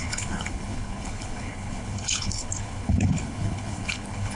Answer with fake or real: fake